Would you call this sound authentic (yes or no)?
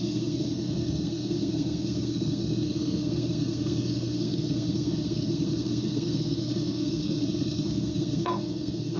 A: no